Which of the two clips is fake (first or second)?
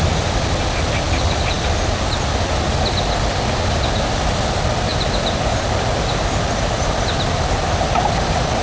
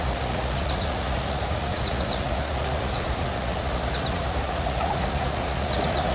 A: second